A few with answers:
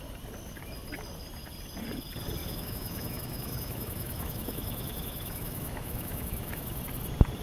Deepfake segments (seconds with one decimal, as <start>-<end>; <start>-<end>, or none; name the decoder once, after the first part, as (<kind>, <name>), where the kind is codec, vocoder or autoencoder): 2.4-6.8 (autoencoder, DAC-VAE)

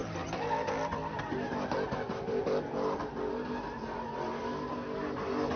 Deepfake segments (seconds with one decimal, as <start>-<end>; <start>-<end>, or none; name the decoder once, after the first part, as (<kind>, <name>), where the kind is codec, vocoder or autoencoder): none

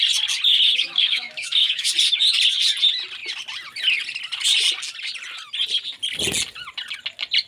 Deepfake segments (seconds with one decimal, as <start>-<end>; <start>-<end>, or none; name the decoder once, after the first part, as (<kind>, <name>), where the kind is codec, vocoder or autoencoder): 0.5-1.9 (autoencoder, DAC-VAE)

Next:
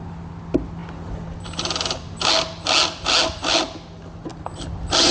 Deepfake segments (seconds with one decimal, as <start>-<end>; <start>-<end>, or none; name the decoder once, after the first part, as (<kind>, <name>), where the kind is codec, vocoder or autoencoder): none